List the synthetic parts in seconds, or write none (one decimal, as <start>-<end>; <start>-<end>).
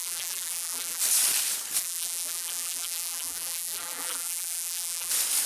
0.0-1.0; 1.8-5.1